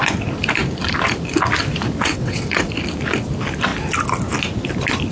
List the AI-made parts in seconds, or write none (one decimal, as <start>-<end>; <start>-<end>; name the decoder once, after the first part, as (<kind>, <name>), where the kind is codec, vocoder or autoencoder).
2.0-2.7 (vocoder, WaveNeXt)